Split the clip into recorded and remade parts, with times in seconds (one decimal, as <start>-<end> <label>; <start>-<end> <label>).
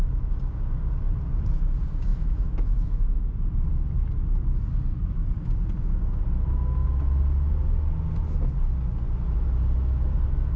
0.0-2.1 recorded; 2.1-3.3 remade; 3.3-10.6 recorded